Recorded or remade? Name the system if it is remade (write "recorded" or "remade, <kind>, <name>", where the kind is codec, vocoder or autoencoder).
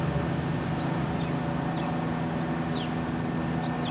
recorded